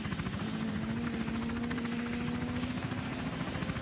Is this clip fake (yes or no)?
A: no